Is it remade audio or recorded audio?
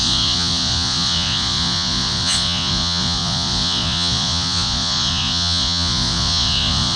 remade